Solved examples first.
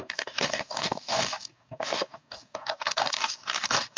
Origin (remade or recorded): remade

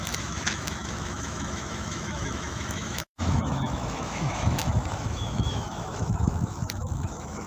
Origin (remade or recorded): remade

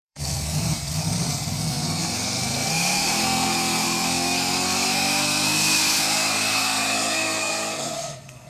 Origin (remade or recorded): remade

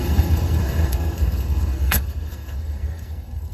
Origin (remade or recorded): remade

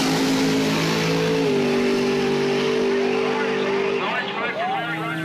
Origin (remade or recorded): recorded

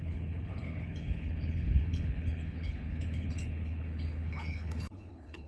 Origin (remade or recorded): remade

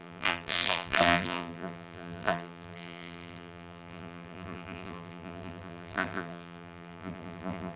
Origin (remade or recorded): remade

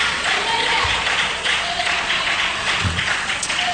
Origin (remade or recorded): remade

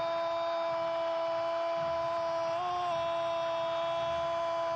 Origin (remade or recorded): recorded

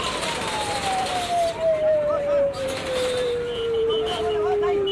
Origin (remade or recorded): remade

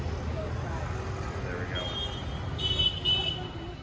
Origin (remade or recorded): recorded